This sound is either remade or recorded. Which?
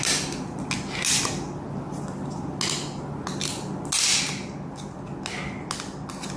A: recorded